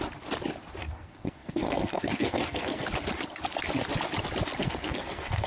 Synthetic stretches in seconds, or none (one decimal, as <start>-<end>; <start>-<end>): 0.8-2.9; 4.6-5.5